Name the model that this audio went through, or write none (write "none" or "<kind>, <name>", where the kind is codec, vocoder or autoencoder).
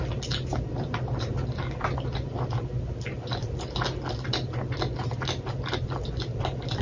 none